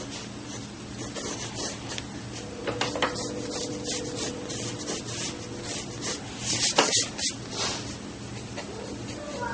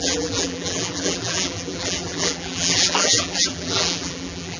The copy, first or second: second